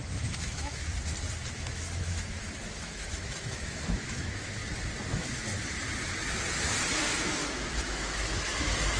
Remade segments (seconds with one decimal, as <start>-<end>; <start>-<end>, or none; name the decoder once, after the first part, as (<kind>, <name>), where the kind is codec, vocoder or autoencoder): 0.0-0.9 (autoencoder, DAC-VAE); 1.5-4.6; 5.1-5.5; 7.2-9.0